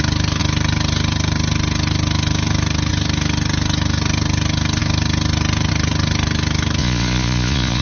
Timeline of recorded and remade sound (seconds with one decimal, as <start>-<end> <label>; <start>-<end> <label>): 0.0-6.8 recorded; 6.8-7.8 remade